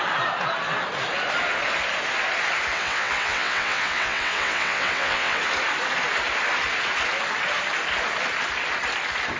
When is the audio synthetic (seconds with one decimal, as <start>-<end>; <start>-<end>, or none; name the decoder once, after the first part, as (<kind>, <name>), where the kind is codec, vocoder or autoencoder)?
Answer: 2.7-5.4 (vocoder, WaveNeXt)